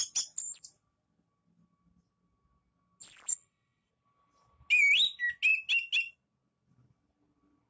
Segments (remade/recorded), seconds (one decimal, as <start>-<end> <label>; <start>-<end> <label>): 0.0-3.3 recorded; 3.3-3.9 remade; 3.9-7.7 recorded